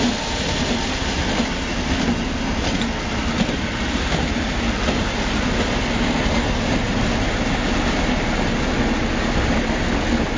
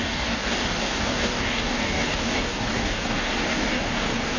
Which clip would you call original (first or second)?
first